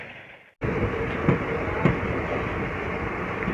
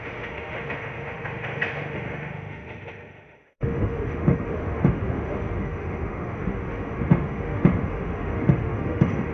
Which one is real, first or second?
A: first